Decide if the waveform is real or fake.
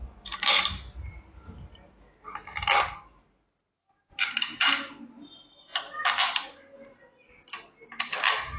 real